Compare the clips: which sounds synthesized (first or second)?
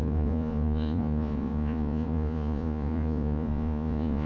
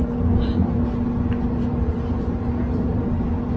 first